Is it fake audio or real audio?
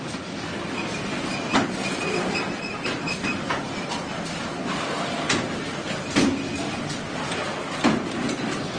real